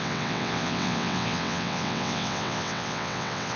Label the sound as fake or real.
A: fake